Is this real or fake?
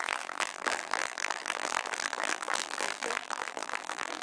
fake